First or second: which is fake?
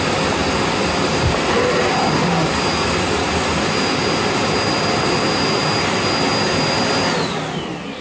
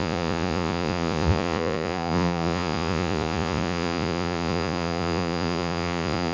second